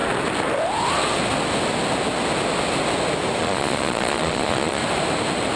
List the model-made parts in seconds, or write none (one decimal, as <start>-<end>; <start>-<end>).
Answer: 3.4-4.8